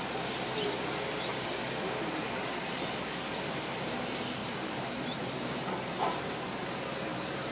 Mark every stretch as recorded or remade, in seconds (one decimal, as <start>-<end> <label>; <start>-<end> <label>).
0.0-4.4 recorded; 4.4-7.5 remade